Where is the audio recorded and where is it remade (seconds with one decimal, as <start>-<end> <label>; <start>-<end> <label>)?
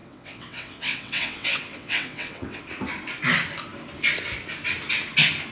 0.0-2.6 remade; 2.6-5.5 recorded